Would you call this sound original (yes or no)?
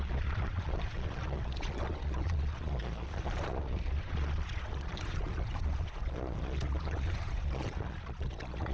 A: no